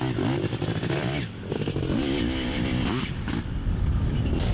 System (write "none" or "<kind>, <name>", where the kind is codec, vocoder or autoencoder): none